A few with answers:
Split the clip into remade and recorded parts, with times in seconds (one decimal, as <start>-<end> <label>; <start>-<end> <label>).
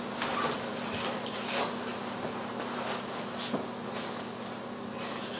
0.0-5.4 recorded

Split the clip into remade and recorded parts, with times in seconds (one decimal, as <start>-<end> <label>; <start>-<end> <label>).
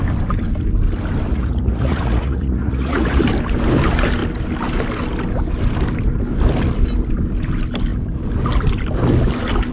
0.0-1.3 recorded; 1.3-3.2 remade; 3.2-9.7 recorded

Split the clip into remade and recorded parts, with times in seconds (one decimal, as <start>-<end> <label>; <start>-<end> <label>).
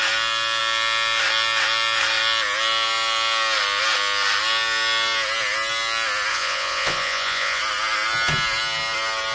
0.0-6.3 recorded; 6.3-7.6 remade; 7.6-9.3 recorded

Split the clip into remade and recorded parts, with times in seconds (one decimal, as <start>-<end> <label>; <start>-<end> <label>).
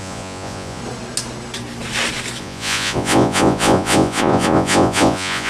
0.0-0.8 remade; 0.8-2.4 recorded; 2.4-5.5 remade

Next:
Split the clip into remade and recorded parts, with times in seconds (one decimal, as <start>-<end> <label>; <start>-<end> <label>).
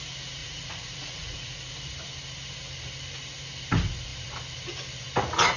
0.0-0.4 recorded; 0.4-1.7 remade; 1.7-5.6 recorded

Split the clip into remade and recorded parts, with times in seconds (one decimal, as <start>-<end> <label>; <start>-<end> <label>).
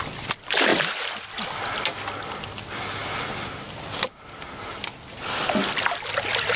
0.0-6.6 recorded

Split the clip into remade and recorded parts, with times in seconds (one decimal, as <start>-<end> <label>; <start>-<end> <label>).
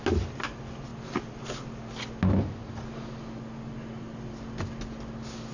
0.0-5.5 recorded